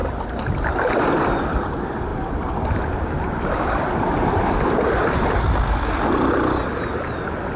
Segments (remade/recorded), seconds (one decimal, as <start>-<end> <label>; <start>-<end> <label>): 0.0-7.6 recorded